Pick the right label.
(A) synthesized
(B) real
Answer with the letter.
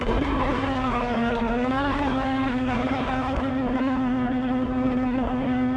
A